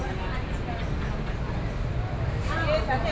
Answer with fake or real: real